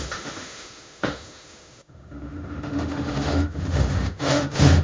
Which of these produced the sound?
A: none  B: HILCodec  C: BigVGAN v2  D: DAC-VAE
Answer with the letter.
D